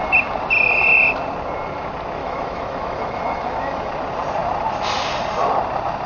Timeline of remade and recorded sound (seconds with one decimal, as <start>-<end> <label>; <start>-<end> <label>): 0.0-2.2 recorded; 2.2-3.9 remade; 3.9-6.1 recorded

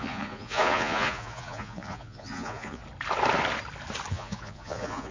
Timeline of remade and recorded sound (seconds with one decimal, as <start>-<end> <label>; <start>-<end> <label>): 0.0-2.8 remade; 2.8-4.1 recorded; 4.1-5.1 remade

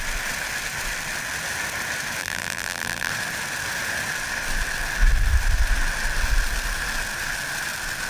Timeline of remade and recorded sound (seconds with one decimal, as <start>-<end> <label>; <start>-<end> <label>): 0.0-2.2 recorded; 2.2-3.1 remade; 3.1-8.1 recorded

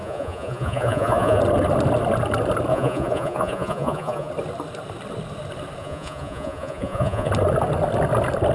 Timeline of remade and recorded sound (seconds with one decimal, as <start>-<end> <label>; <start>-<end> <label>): 0.0-1.4 remade; 1.4-2.7 recorded; 2.7-4.3 remade; 4.3-5.8 recorded; 5.8-7.3 remade; 7.3-8.5 recorded

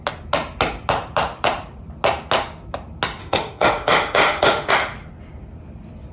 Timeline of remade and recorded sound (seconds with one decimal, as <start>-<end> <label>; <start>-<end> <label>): 0.0-3.2 recorded; 3.2-4.7 remade; 4.7-6.1 recorded

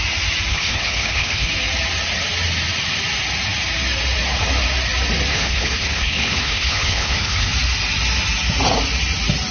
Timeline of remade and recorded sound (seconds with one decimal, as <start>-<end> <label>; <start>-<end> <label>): 0.0-0.5 recorded; 0.5-1.5 remade; 1.5-5.3 recorded; 5.3-7.5 remade; 7.5-9.5 recorded

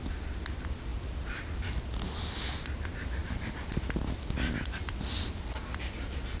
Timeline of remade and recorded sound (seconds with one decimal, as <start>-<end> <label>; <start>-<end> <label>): 0.0-6.4 recorded